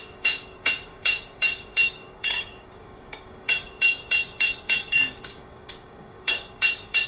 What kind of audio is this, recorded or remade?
remade